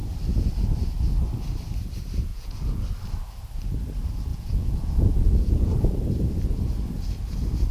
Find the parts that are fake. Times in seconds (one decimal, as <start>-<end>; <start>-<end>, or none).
2.3-2.8; 4.3-5.9